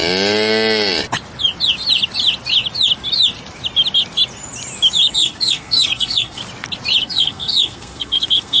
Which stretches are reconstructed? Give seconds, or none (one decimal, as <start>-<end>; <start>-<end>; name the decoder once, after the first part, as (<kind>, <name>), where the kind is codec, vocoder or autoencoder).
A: 5.1-6.4 (codec, SNAC); 7.0-8.6